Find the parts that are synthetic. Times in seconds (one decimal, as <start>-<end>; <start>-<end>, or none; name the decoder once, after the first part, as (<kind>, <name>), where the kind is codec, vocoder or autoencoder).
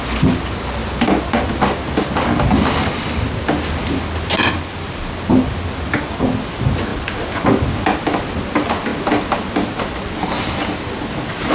none